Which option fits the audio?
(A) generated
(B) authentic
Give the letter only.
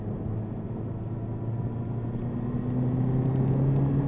B